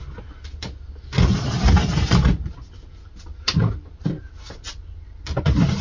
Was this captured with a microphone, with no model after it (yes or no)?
yes